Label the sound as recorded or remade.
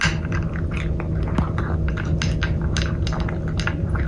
recorded